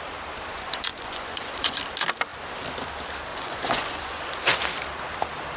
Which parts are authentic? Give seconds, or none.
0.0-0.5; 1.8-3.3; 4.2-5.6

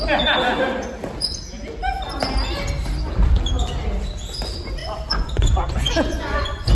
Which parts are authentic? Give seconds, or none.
0.0-4.8

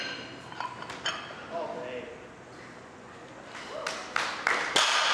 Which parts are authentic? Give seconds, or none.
0.0-2.8; 3.3-5.1

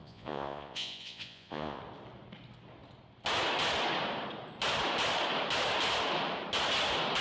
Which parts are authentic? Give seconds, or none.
1.8-7.2